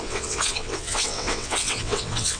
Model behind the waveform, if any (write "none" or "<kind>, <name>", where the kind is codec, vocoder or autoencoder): vocoder, WaveNeXt